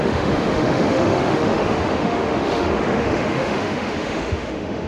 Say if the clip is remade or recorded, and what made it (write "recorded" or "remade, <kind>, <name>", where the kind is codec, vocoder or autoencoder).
remade, autoencoder, DAC-VAE